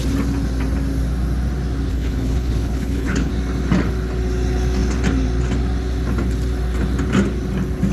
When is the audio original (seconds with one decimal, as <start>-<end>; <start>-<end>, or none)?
0.0-1.9; 3.3-7.9